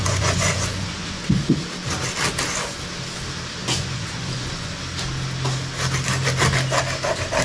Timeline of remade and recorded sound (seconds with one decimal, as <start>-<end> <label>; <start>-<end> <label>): 0.0-1.6 remade; 1.6-3.6 recorded; 3.6-4.8 remade; 4.8-7.4 recorded